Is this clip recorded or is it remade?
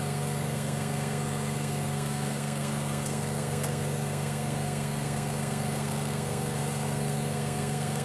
remade